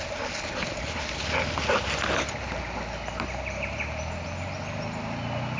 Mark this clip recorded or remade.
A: recorded